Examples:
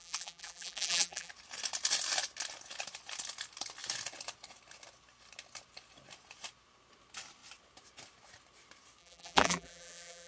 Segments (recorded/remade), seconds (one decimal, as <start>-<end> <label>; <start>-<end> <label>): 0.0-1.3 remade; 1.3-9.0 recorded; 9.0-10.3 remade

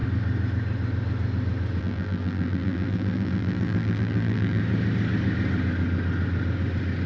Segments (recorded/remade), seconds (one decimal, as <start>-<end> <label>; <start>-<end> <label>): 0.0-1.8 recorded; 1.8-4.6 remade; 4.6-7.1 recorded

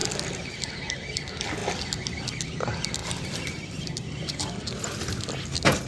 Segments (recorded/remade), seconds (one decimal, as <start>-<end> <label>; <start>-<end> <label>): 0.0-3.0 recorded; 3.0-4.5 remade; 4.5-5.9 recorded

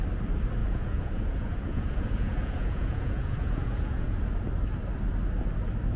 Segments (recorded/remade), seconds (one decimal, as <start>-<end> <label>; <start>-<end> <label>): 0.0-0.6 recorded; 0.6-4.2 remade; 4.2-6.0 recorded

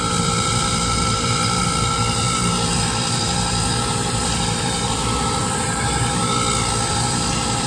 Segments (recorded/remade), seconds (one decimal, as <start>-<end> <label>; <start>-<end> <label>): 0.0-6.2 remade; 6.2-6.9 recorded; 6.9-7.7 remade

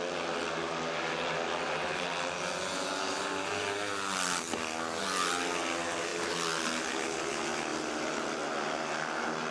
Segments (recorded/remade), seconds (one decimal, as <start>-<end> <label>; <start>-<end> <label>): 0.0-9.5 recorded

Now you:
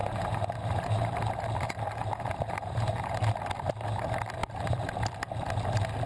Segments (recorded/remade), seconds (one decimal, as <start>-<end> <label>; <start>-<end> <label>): 0.0-1.2 remade; 1.2-2.0 recorded; 2.0-3.1 remade; 3.1-4.4 recorded; 4.4-4.9 remade; 4.9-6.1 recorded

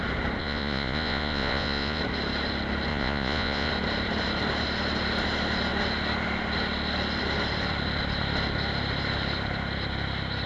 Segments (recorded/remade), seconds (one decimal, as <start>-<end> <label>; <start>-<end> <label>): 0.0-0.4 recorded; 0.4-2.0 remade; 2.0-2.9 recorded; 2.9-3.7 remade; 3.7-10.5 recorded